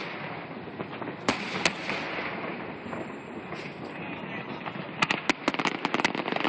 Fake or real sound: real